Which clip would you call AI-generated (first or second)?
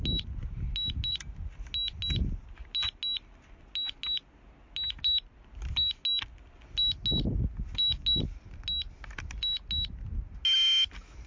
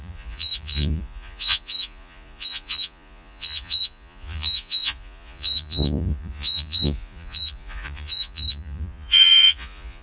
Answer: second